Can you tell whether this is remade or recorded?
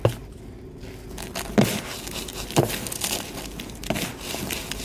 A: recorded